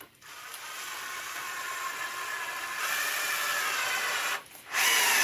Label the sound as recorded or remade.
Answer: remade